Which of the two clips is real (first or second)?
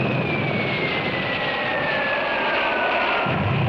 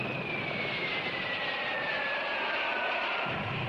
first